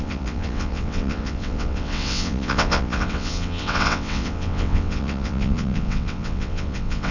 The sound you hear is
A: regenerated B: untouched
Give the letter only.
A